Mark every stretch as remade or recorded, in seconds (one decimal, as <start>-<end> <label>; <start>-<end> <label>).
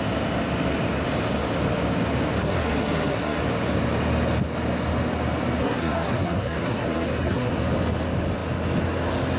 0.0-2.4 recorded; 2.4-3.4 remade; 3.4-5.6 recorded; 5.6-7.5 remade; 7.5-9.4 recorded